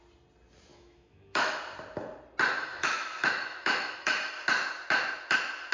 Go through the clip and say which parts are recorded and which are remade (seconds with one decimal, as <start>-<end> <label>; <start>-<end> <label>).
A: 0.0-0.7 recorded; 0.7-1.6 remade; 1.6-2.6 recorded; 2.6-4.3 remade; 4.3-5.7 recorded